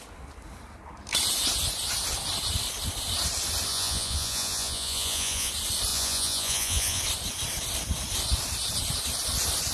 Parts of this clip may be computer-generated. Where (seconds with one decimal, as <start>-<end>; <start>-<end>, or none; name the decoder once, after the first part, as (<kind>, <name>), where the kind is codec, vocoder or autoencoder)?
3.7-5.5 (vocoder, Vocos); 5.9-7.0